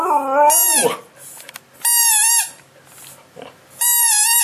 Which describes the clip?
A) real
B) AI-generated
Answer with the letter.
A